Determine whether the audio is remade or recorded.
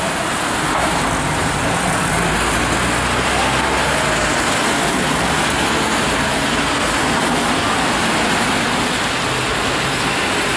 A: recorded